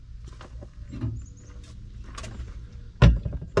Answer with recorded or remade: recorded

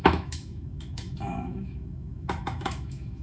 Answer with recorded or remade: remade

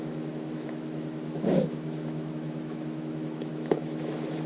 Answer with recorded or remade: remade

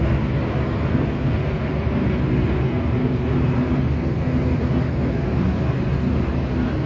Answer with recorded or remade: recorded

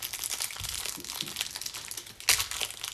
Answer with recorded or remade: recorded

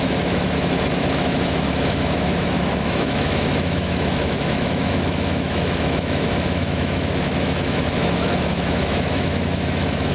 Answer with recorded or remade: remade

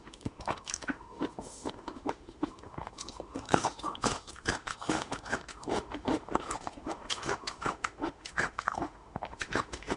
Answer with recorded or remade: remade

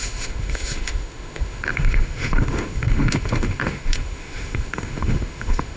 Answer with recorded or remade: remade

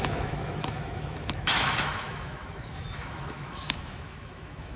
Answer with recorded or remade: remade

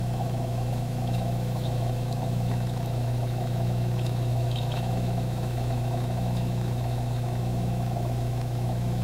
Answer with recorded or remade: remade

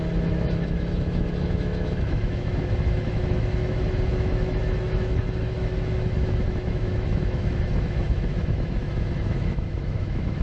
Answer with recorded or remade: remade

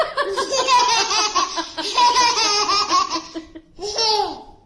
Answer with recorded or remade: recorded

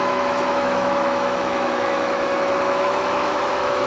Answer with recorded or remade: remade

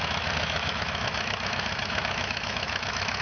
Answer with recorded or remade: remade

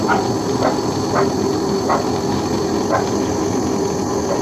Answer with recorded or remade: recorded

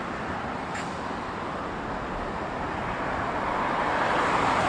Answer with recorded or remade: recorded